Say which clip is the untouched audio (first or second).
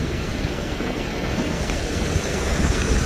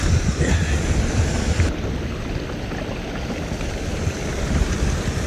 second